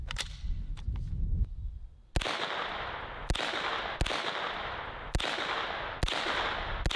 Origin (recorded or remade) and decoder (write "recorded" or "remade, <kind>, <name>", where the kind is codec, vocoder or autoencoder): recorded